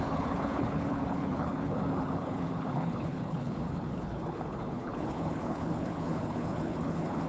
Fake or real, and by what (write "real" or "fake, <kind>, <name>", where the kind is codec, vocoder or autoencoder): fake, codec, HILCodec